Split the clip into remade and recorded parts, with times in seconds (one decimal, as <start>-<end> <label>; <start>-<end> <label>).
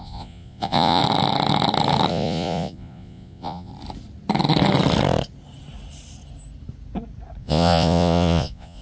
0.0-1.0 remade; 1.0-2.1 recorded; 2.1-3.7 remade; 3.7-7.4 recorded; 7.4-8.8 remade